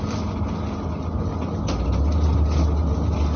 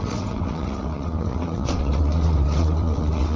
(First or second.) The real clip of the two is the first